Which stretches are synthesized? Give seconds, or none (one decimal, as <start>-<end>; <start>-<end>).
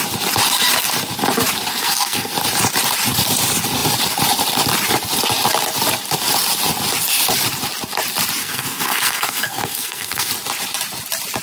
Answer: 1.7-2.3; 8.4-10.3